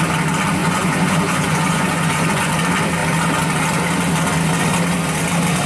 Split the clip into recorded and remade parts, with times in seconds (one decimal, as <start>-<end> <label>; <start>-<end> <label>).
0.0-0.6 recorded; 0.6-2.5 remade; 2.5-5.7 recorded